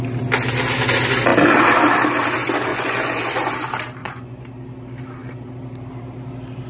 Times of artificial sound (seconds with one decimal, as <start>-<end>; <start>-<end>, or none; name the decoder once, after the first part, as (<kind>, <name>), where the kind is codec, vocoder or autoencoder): 2.7-3.5 (vocoder, Vocos); 4.0-4.5